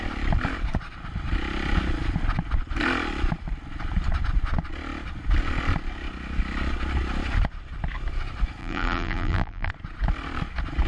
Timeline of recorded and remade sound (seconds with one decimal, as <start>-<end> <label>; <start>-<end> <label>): 0.0-8.6 recorded; 8.6-9.7 remade; 9.7-10.9 recorded